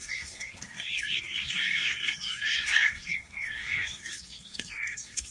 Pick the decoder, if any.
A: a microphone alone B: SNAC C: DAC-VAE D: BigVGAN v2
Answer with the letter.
B